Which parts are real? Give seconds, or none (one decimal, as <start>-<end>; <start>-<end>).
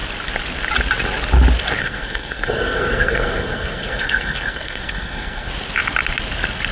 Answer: 0.0-1.8; 5.5-6.7